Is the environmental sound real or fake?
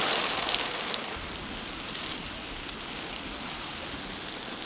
fake